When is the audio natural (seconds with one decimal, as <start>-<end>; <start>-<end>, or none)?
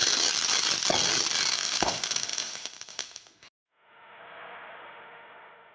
0.0-1.5